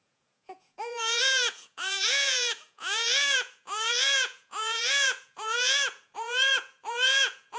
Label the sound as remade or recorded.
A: remade